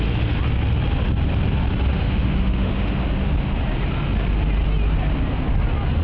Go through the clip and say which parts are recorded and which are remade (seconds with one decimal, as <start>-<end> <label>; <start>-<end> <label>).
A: 0.0-1.9 recorded; 1.9-3.0 remade; 3.0-6.0 recorded